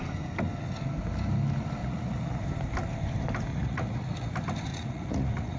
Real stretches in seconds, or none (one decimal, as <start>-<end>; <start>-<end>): 0.0-1.8; 2.4-3.5; 4.3-4.7